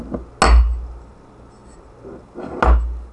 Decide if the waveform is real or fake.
real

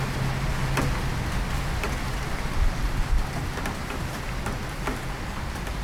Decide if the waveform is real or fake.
real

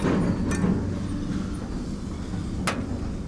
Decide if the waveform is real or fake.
real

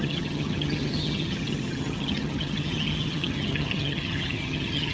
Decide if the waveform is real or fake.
fake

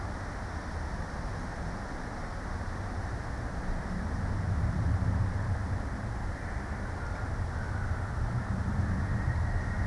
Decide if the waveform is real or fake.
real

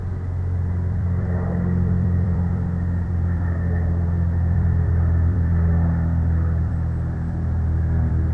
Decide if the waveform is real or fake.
fake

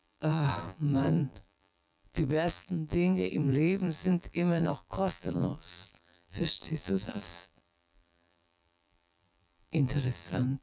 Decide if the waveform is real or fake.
fake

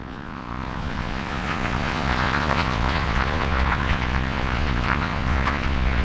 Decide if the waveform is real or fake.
fake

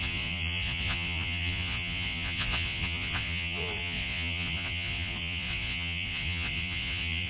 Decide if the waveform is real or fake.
fake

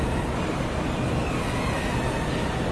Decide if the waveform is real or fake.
real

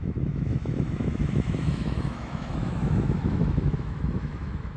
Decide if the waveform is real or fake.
fake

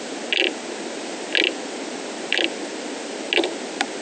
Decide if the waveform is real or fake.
real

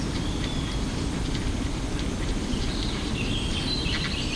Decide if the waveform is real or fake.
real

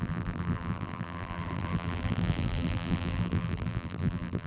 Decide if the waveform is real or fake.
fake